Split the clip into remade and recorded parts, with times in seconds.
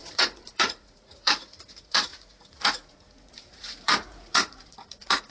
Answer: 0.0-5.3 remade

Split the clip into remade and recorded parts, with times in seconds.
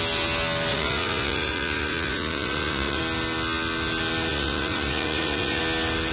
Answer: 0.0-0.7 recorded; 0.7-3.0 remade; 3.0-4.3 recorded; 4.3-5.6 remade; 5.6-6.1 recorded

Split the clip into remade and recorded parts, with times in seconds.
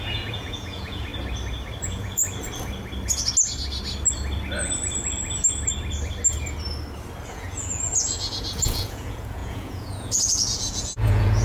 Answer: 0.0-1.1 remade; 1.1-1.8 recorded; 1.8-2.2 remade; 2.2-7.3 recorded; 7.3-11.4 remade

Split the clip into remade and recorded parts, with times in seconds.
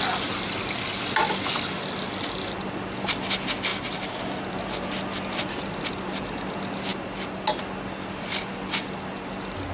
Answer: 0.0-9.7 recorded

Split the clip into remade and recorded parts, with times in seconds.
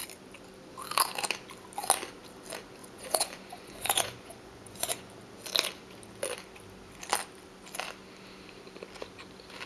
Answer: 0.0-2.8 recorded; 2.8-5.1 remade; 5.1-9.7 recorded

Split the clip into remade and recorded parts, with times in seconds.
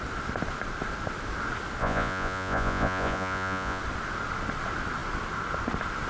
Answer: 0.0-1.8 recorded; 1.8-3.8 remade; 3.8-6.1 recorded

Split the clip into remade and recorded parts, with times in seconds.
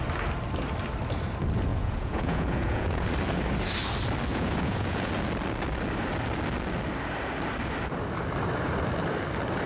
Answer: 0.0-1.7 recorded; 1.7-3.1 remade; 3.1-4.3 recorded; 4.3-5.1 remade; 5.1-9.7 recorded